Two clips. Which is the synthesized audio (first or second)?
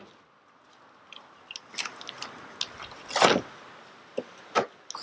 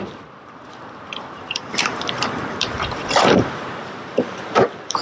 second